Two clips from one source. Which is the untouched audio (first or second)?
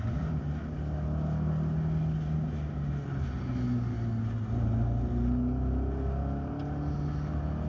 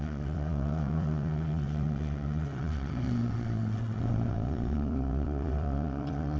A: first